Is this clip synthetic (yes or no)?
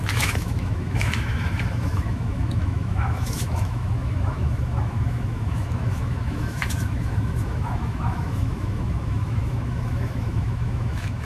yes